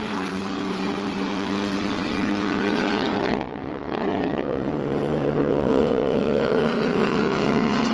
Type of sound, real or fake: fake